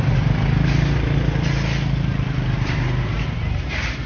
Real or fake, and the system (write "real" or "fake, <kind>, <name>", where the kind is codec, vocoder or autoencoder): real